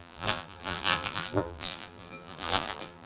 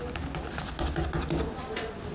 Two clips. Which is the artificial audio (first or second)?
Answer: first